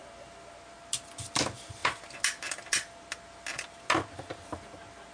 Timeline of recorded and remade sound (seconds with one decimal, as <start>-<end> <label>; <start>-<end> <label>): 0.0-5.1 recorded